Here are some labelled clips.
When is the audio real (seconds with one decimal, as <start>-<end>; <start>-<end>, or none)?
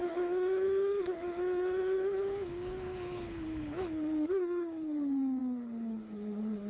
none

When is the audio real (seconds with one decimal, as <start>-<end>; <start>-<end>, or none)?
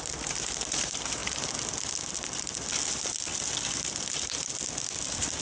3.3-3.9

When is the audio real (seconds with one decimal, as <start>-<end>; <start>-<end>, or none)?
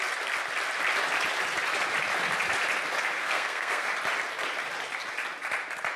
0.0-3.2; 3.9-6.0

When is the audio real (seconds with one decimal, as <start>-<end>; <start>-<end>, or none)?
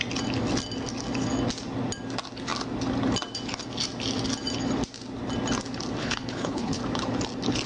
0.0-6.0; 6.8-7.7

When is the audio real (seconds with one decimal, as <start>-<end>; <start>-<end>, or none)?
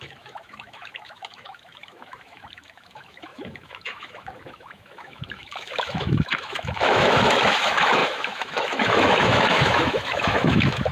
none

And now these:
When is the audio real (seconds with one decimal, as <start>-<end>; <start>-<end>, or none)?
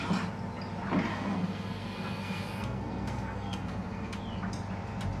0.0-1.1; 4.2-5.2